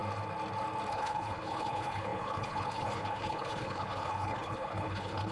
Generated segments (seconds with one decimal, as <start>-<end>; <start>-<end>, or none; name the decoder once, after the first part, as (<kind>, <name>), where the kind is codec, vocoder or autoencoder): 0.9-5.3 (codec, HILCodec)